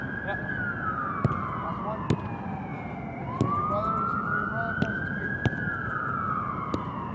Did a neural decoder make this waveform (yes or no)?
no